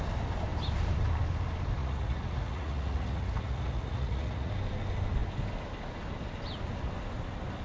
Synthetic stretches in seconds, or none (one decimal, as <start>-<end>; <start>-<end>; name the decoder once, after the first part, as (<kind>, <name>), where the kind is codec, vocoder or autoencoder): 1.8-4.5 (vocoder, Vocos)